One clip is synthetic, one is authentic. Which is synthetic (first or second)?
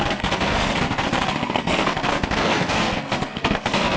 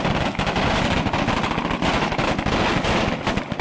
first